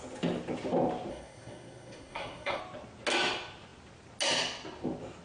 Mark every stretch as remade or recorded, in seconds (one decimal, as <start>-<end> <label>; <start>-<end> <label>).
0.0-1.1 recorded; 1.1-2.6 remade; 2.6-5.2 recorded